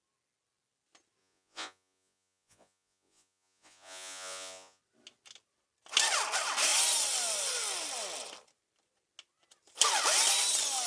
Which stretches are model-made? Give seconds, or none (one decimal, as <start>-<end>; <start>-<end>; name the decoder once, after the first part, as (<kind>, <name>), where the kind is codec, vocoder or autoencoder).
1.2-4.8 (vocoder, Vocos)